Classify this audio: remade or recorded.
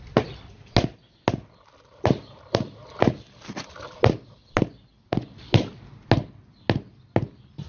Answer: recorded